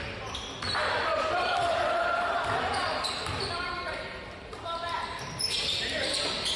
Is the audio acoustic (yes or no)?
no